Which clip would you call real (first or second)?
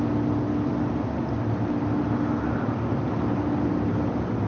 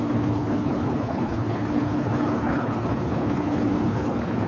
first